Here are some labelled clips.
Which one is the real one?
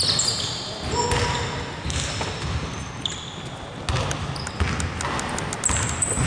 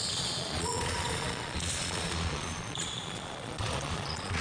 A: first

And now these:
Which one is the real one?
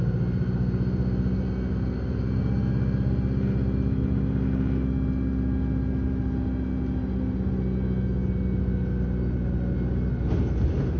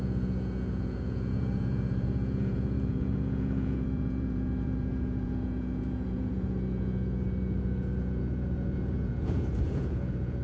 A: first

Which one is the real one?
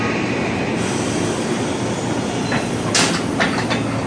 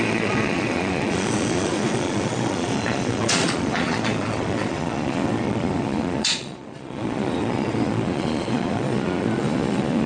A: first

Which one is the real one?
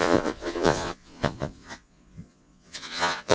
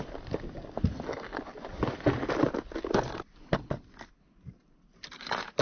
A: second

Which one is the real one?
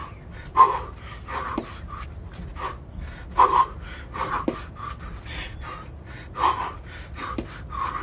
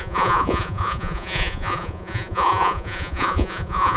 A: first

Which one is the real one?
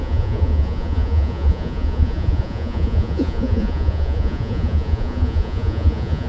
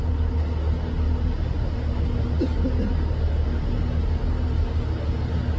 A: second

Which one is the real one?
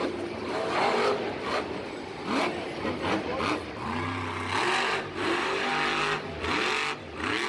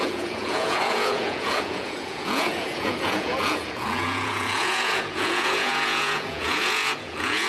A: first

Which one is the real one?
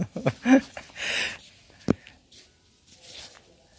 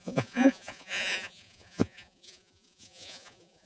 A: first